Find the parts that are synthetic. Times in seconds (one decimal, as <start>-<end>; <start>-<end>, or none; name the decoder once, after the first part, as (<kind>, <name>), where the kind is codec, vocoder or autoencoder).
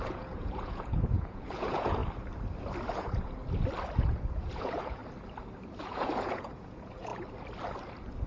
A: 0.0-2.0 (vocoder, Vocos); 2.9-3.4; 4.0-5.0; 5.8-7.1